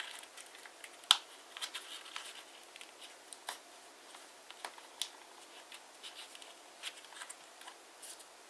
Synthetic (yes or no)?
no